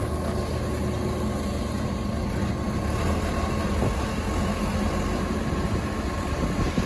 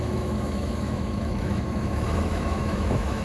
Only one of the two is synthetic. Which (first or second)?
second